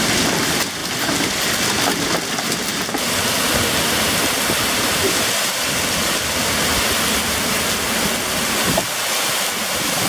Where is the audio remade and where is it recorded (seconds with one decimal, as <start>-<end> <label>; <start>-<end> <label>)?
0.0-10.1 recorded